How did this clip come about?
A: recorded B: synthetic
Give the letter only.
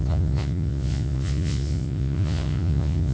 B